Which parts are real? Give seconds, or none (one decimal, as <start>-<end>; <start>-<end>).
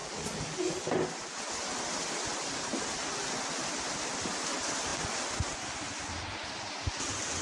0.6-7.4